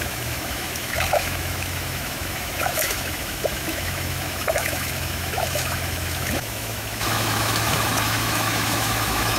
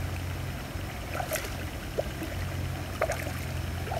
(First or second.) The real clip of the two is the second